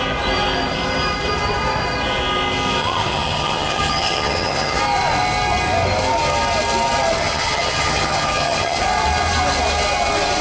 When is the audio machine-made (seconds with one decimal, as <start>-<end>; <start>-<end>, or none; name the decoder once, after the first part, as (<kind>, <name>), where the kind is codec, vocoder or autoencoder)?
2.8-4.8 (vocoder, HiFi-GAN); 7.2-8.8